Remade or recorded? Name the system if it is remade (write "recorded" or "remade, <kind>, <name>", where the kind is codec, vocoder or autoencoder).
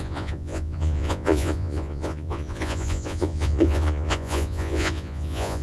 remade, vocoder, Vocos